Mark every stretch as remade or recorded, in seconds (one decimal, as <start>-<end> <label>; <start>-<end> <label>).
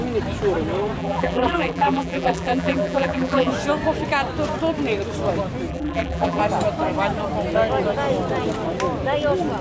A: 0.0-1.0 recorded; 1.0-3.5 remade; 3.5-5.7 recorded; 5.7-6.4 remade; 6.4-9.6 recorded